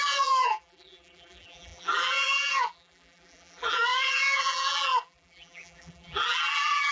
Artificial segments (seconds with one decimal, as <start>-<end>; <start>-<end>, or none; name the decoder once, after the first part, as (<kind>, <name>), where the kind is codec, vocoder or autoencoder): 0.0-6.9 (vocoder, BigVGAN v2)